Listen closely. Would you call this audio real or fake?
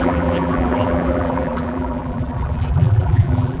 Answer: fake